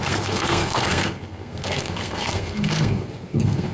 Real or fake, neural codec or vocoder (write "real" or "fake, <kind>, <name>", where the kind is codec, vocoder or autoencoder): fake, codec, SNAC